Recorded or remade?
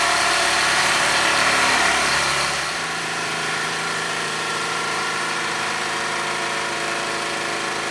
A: remade